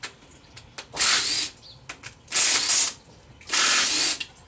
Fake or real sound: real